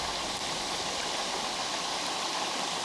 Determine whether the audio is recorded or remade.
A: recorded